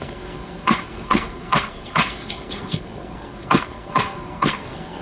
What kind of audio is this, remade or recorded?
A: remade